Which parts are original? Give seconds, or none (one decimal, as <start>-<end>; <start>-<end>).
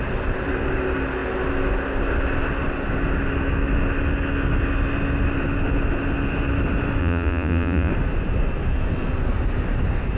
0.0-7.0; 7.9-10.2